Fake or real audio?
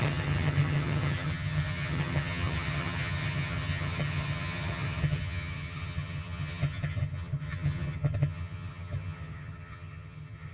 fake